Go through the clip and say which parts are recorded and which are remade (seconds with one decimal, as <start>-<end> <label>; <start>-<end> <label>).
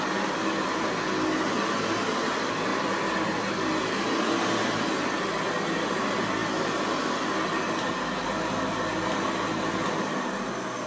0.0-10.9 recorded